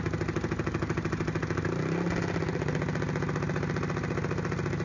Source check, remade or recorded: recorded